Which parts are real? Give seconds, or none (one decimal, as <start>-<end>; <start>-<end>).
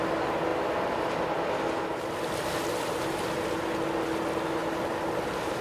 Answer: 0.0-5.6